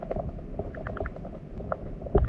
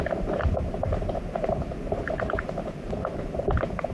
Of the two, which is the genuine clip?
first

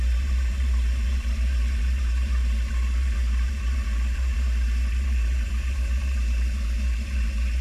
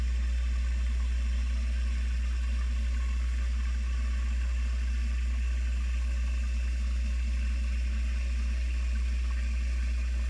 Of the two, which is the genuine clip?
second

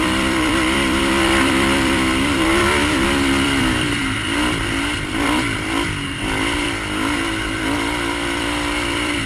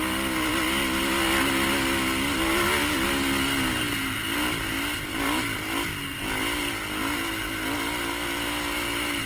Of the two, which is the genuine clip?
second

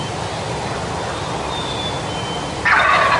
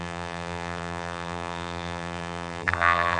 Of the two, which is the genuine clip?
first